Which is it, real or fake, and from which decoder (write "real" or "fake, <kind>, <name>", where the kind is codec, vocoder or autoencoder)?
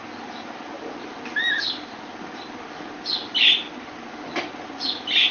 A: real